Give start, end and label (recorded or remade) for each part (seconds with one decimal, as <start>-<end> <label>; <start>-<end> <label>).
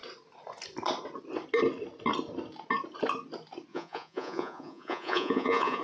0.0-3.7 recorded; 3.7-5.8 remade